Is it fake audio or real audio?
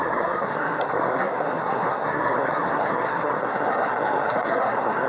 fake